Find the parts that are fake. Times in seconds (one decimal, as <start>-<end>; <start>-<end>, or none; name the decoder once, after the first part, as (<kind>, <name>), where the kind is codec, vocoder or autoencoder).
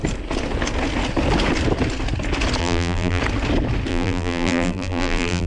2.6-3.2 (vocoder, BigVGAN v2); 3.9-5.5